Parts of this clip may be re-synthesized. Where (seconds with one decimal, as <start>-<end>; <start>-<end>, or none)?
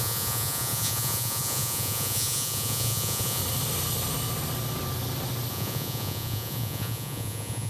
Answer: 0.0-3.4; 5.5-7.7